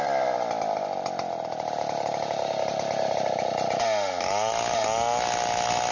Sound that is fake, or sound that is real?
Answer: real